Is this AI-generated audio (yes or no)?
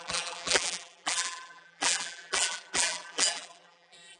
yes